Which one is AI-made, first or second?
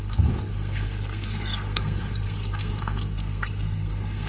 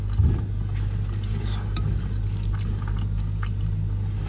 first